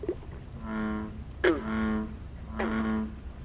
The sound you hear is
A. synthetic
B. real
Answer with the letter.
B